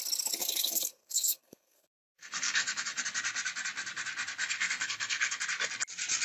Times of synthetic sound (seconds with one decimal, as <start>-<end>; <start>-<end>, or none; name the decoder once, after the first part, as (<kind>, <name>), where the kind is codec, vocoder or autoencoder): 0.4-3.0 (codec, SNAC); 4.4-5.4